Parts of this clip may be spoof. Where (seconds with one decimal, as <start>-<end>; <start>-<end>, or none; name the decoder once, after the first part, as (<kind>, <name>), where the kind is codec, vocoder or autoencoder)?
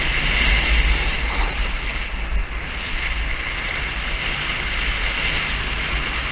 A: none